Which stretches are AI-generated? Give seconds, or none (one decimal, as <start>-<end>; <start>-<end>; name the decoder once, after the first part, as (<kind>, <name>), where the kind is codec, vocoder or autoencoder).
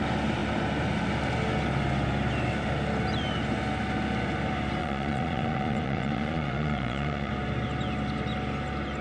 4.8-7.3 (vocoder, Vocos)